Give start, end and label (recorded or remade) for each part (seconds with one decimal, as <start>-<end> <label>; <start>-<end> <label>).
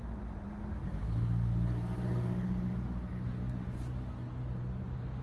0.0-5.2 recorded